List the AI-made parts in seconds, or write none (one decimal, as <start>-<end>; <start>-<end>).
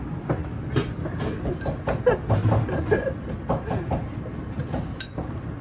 none